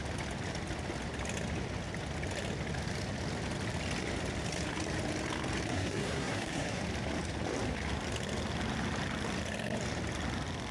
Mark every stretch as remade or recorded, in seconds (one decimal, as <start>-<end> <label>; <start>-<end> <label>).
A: 0.0-5.7 recorded; 5.7-6.8 remade; 6.8-10.7 recorded